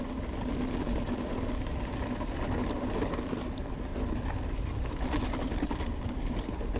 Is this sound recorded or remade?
recorded